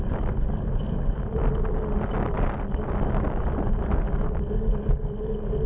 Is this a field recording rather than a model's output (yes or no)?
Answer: yes